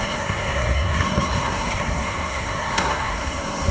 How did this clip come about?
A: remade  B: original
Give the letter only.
A